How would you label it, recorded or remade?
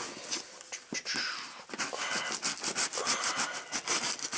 recorded